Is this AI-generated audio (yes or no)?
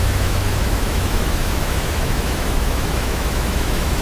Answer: yes